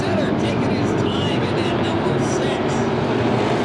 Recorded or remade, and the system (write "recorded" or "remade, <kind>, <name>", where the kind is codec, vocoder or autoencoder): recorded